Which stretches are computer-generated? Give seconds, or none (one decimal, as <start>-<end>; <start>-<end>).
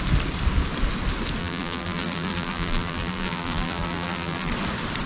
1.4-4.5